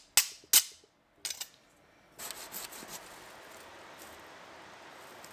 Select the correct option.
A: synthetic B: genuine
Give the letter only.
B